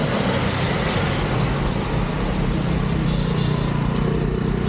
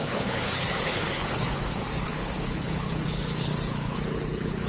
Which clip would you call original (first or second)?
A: first